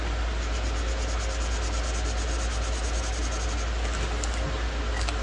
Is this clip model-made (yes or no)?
no